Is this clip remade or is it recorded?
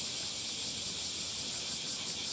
recorded